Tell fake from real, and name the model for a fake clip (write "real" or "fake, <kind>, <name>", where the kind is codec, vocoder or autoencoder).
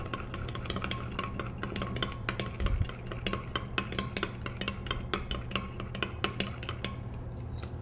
real